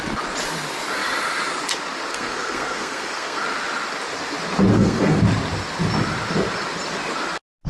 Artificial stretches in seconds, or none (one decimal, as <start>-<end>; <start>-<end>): 2.1-3.4; 4.7-5.2